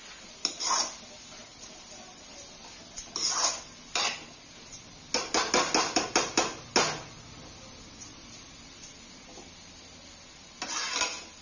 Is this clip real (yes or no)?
yes